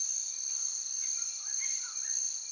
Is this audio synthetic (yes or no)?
no